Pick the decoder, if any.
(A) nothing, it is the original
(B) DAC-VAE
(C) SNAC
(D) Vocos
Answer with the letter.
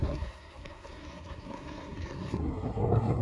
C